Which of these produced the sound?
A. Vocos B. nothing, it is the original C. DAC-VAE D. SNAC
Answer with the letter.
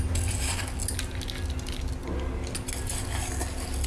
B